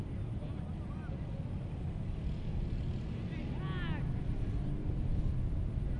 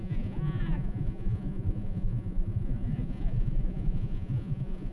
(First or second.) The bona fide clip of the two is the first